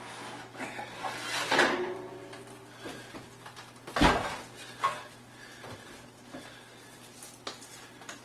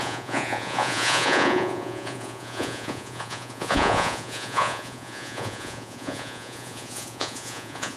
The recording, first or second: first